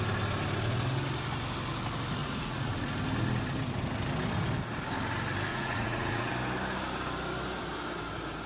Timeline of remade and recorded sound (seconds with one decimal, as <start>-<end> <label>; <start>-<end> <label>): 0.0-2.2 recorded; 2.2-2.9 remade; 2.9-5.5 recorded; 5.5-6.3 remade; 6.3-8.5 recorded